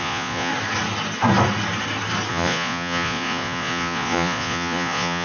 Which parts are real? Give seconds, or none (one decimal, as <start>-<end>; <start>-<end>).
0.5-2.3